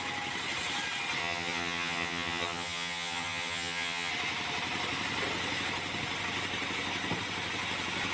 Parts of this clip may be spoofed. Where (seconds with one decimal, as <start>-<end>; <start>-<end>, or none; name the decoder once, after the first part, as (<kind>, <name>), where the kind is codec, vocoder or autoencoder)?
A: 1.2-4.1 (vocoder, HiFi-GAN)